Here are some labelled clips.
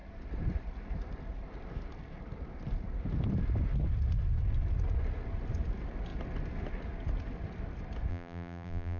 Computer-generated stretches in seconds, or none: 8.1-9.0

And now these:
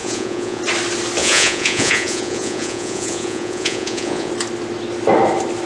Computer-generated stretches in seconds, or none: 0.0-0.6; 1.2-4.3

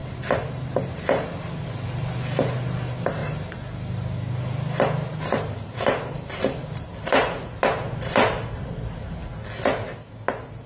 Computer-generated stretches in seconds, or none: 0.0-9.2

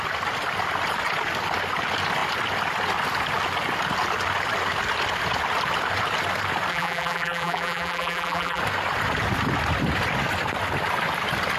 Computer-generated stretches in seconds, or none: 6.7-8.6

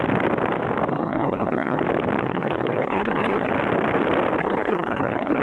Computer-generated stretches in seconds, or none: 0.9-1.8; 2.2-3.5; 4.4-5.4

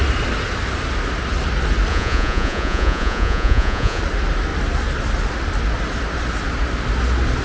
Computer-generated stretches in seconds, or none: 1.9-4.0

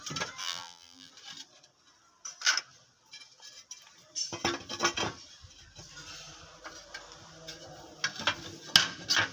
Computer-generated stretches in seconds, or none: 0.4-1.1